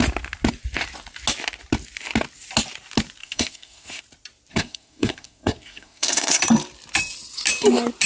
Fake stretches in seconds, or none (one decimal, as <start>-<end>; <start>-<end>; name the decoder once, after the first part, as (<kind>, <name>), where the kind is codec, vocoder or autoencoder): 3.2-4.0 (codec, SNAC); 4.5-6.4